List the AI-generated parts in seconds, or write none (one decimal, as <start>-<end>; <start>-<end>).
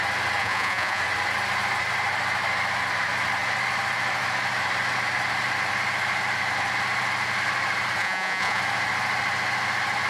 0.4-1.0; 8.0-8.6